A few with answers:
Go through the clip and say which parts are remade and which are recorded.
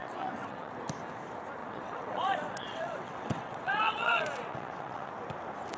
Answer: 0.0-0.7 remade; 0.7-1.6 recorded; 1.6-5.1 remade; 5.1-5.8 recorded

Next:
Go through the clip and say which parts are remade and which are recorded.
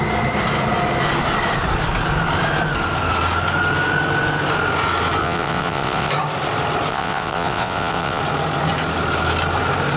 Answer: 0.0-5.2 recorded; 5.2-6.1 remade; 6.1-6.9 recorded; 6.9-8.2 remade; 8.2-10.0 recorded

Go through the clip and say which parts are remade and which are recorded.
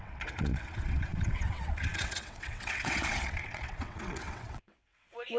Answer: 0.0-5.4 remade